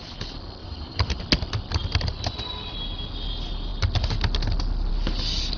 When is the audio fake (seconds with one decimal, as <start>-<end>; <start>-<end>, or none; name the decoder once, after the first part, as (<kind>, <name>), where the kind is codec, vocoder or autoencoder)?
0.6-1.2 (vocoder, BigVGAN v2)